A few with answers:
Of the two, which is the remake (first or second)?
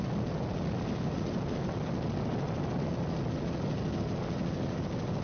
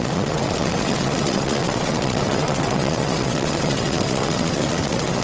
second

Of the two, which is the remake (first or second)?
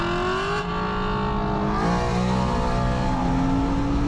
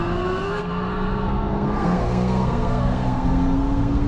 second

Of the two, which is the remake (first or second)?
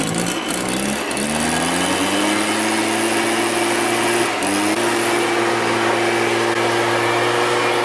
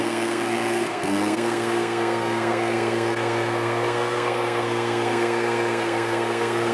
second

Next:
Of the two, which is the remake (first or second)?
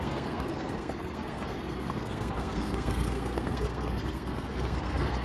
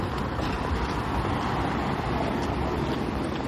first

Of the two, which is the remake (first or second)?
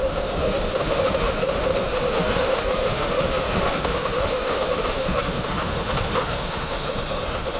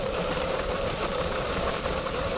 first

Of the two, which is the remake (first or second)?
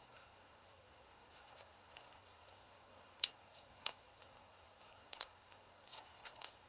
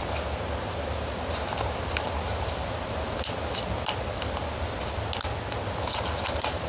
first